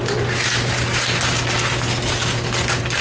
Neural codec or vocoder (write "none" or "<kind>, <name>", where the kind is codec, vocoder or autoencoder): none